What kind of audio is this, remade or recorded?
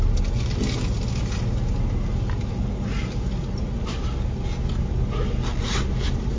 recorded